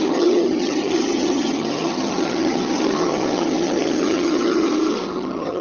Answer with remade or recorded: remade